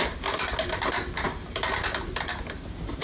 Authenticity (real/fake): real